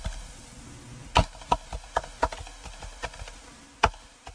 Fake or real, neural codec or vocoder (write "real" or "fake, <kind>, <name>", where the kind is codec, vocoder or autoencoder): real